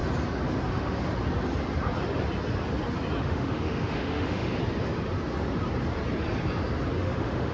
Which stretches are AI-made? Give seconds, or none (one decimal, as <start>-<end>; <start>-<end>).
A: 0.7-1.1; 3.2-4.6; 7.0-7.5